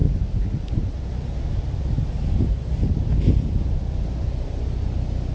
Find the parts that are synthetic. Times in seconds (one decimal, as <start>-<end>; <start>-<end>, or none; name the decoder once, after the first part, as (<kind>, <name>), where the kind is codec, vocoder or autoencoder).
none

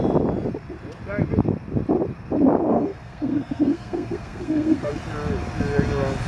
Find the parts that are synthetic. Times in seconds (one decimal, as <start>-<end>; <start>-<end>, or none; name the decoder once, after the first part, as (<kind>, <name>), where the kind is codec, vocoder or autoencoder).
2.7-4.9 (codec, SNAC)

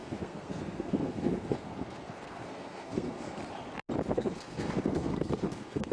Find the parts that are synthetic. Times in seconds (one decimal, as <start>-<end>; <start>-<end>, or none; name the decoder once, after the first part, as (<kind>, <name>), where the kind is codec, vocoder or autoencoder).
0.0-3.4 (codec, SNAC); 4.1-5.9

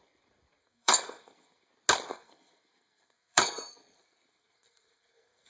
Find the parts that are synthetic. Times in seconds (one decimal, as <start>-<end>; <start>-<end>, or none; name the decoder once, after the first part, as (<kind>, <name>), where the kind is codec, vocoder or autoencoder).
0.6-1.7 (codec, SNAC); 2.1-5.5

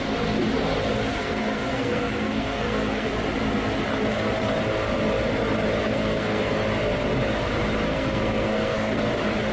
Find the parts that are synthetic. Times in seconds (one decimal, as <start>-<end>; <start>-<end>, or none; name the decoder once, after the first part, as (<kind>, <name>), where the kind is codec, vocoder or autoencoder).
1.2-3.1 (codec, SNAC); 5.8-6.5; 7.9-9.0

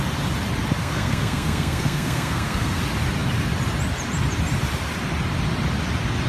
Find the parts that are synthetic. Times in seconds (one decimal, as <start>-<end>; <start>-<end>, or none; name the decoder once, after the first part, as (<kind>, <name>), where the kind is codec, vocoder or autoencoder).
0.8-2.8 (codec, SNAC)